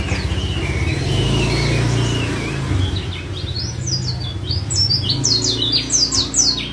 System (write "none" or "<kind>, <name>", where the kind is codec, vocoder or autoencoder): none